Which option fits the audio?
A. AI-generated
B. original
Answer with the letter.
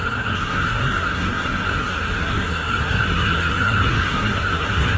A